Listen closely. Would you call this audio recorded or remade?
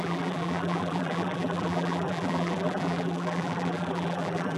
remade